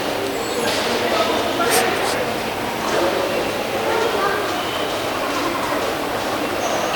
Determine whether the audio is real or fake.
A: real